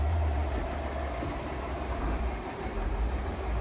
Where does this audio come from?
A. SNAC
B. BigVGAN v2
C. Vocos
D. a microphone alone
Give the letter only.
B